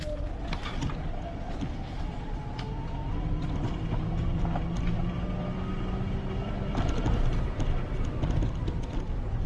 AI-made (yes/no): no